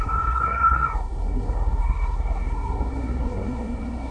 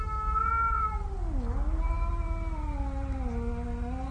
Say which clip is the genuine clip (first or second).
second